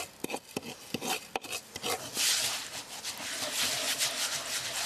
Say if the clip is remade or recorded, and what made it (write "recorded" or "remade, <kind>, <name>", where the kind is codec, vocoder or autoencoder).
recorded